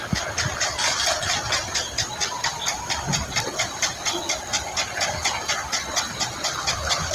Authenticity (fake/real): real